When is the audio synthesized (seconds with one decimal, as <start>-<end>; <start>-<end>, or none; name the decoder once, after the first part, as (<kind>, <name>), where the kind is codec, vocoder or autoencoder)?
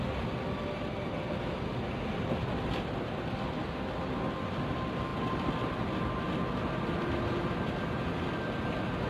none